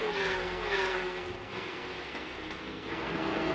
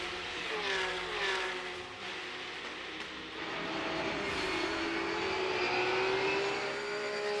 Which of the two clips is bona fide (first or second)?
second